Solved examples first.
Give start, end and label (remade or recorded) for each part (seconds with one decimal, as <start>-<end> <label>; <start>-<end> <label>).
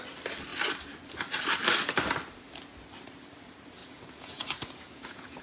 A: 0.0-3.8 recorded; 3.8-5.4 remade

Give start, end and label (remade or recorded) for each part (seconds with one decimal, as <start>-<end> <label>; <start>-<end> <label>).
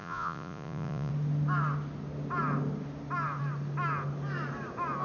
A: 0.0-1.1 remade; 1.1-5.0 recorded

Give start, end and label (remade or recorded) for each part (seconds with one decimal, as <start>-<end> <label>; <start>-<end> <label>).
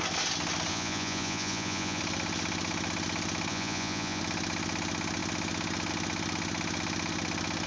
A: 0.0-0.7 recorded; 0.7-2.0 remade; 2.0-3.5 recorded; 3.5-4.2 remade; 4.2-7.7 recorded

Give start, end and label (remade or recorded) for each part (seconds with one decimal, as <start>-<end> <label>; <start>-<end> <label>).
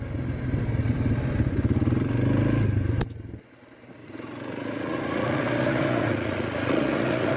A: 0.0-4.0 recorded; 4.0-7.4 remade